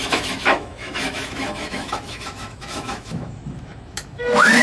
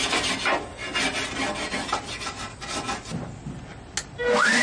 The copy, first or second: first